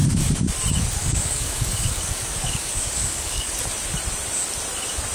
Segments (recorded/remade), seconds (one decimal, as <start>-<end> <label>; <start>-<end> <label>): 0.0-0.5 remade; 0.5-1.0 recorded; 1.0-3.5 remade; 3.5-5.1 recorded